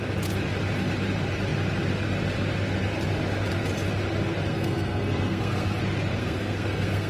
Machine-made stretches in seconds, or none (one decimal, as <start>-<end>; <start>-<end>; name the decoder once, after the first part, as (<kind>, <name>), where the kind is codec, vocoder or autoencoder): 4.5-5.8 (codec, SNAC); 6.2-7.1